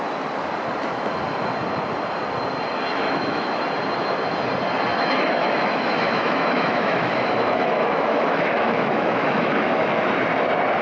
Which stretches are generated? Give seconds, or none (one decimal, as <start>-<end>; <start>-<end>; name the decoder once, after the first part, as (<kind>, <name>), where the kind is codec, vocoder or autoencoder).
2.9-3.6 (autoencoder, DAC-VAE); 4.9-10.1